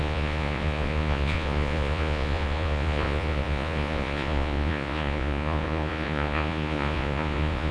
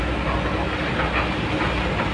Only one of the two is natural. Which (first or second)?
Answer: second